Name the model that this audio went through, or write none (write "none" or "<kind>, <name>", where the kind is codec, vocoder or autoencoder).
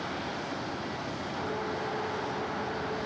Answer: none